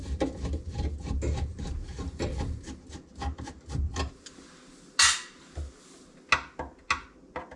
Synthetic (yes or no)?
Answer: no